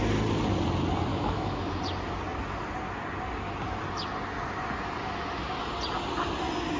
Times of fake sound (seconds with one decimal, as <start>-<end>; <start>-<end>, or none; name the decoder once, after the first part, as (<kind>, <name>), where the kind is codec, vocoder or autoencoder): 1.1-1.8 (autoencoder, DAC-VAE)